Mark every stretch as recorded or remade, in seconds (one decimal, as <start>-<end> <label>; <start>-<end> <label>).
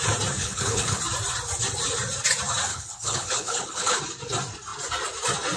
0.0-0.4 recorded; 0.4-1.0 remade; 1.0-2.7 recorded; 2.7-4.0 remade; 4.0-5.6 recorded